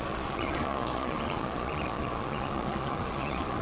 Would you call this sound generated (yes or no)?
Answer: yes